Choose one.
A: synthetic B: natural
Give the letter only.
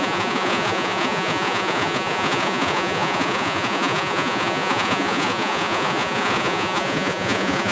A